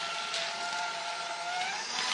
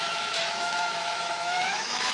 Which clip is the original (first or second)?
first